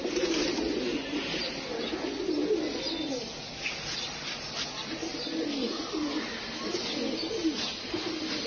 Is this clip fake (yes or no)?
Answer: no